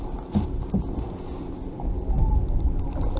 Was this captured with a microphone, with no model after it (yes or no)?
yes